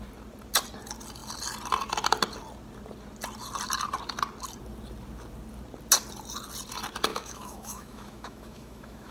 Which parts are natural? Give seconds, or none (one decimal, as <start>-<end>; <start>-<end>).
0.0-7.1